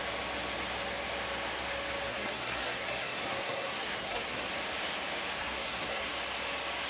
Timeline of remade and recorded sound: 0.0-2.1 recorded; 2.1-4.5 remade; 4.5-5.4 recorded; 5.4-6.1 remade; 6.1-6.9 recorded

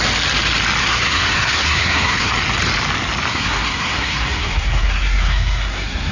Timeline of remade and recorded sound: 0.0-0.8 recorded; 0.8-2.3 remade; 2.3-3.3 recorded; 3.3-6.1 remade

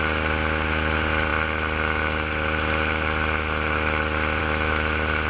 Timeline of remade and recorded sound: 0.0-5.3 recorded

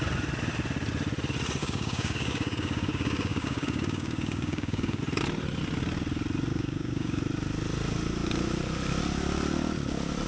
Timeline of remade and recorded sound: 0.0-1.6 recorded; 1.6-5.0 remade; 5.0-6.5 recorded; 6.5-7.2 remade; 7.2-10.3 recorded

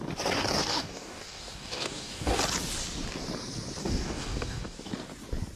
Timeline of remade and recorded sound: 0.0-0.7 recorded; 0.7-2.4 remade; 2.4-3.8 recorded; 3.8-4.9 remade; 4.9-5.6 recorded